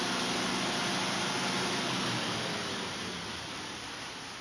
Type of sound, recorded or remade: recorded